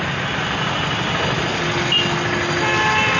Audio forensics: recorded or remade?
recorded